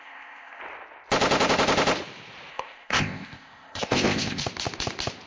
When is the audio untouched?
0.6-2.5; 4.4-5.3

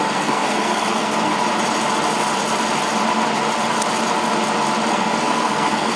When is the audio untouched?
1.3-4.9

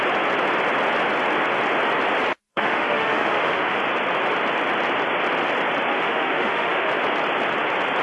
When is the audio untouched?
0.0-2.5; 3.8-5.9; 6.9-8.0

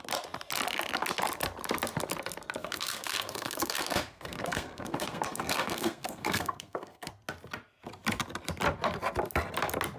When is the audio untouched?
0.0-2.6; 7.1-10.0

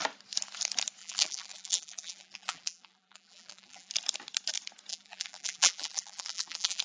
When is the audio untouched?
0.0-1.0; 3.9-4.9